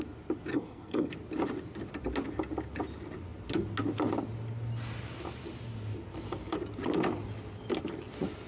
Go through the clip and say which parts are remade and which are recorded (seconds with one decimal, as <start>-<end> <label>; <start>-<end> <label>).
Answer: 0.0-0.5 recorded; 0.5-1.1 remade; 1.1-8.5 recorded